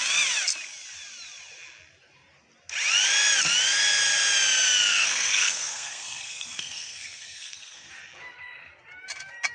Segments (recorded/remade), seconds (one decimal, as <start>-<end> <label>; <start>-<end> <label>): 0.0-4.9 recorded; 4.9-7.9 remade; 7.9-9.5 recorded

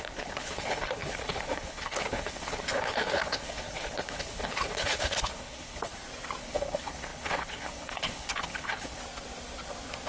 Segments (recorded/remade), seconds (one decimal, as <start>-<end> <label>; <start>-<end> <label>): 0.0-5.9 remade; 5.9-6.4 recorded; 6.4-9.0 remade; 9.0-10.1 recorded

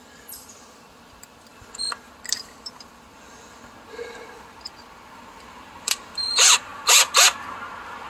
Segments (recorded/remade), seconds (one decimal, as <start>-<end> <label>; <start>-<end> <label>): 0.0-1.5 remade; 1.5-3.0 recorded; 3.0-6.7 remade; 6.7-8.1 recorded

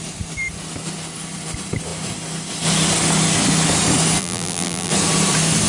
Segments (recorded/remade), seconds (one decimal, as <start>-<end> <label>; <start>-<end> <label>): 0.0-4.2 recorded; 4.2-4.9 remade; 4.9-5.7 recorded

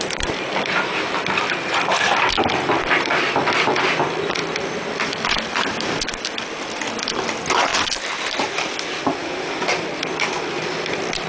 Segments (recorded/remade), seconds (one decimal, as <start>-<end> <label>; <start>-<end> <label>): 0.0-4.4 remade; 4.4-6.5 recorded; 6.5-11.3 remade

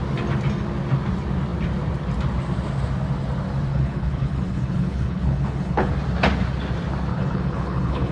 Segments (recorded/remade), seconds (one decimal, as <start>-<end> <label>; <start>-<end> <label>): 0.0-3.7 recorded; 3.7-5.9 remade; 5.9-7.1 recorded; 7.1-8.1 remade

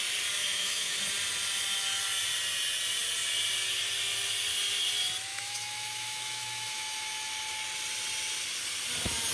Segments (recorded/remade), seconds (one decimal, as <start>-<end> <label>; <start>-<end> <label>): 0.0-0.4 recorded; 0.4-1.0 remade; 1.0-5.3 recorded; 5.3-7.3 remade; 7.3-9.3 recorded